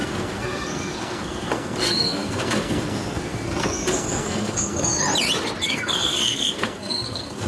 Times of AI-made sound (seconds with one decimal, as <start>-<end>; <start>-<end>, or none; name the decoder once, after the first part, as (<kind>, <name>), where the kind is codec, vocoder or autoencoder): 0.0-5.0 (codec, SNAC); 5.6-7.5